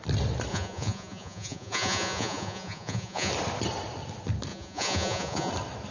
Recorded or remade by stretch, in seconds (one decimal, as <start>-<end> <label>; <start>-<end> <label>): 0.0-0.5 recorded; 0.5-3.3 remade; 3.3-4.5 recorded; 4.5-5.5 remade; 5.5-5.9 recorded